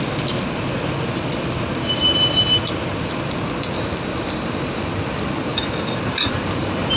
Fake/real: real